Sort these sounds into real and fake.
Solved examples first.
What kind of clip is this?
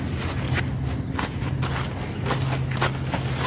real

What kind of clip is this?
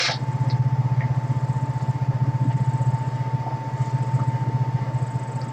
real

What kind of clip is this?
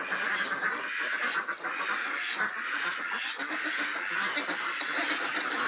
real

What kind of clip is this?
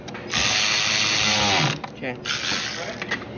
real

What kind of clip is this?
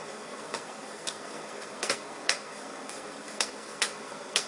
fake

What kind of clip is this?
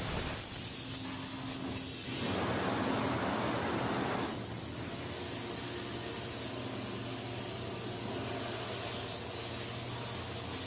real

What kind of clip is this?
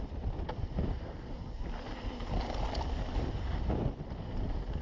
real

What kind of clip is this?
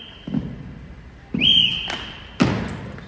fake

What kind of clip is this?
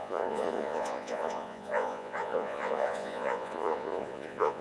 fake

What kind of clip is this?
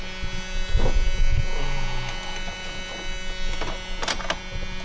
real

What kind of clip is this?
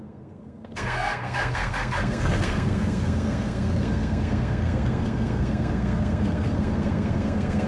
fake